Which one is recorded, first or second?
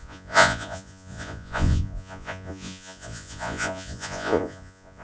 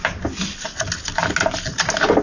second